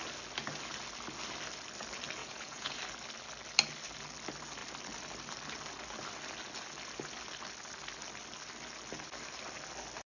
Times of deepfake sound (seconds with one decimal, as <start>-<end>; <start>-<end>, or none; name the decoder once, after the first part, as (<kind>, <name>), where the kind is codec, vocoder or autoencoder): 2.2-2.8 (vocoder, Vocos)